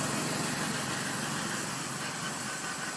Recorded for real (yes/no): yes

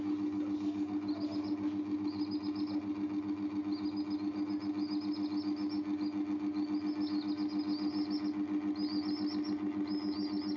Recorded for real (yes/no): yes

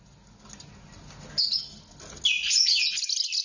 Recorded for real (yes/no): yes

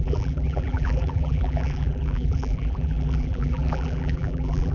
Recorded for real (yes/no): no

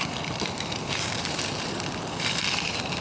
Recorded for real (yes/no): no